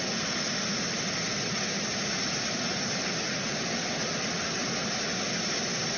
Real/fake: real